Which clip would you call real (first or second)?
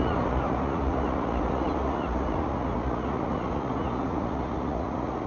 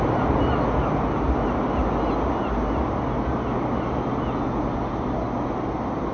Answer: second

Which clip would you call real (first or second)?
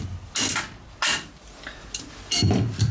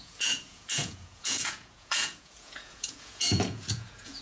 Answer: first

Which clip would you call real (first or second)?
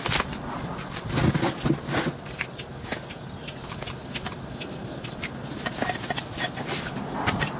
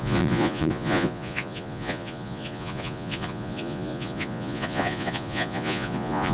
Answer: first